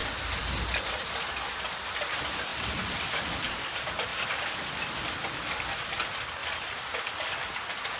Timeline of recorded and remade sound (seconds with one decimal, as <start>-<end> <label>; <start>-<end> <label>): 0.0-0.8 remade; 0.8-2.5 recorded; 2.5-3.1 remade; 3.1-6.4 recorded; 6.4-7.4 remade; 7.4-8.0 recorded